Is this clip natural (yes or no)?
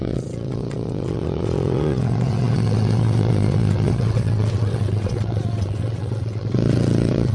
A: no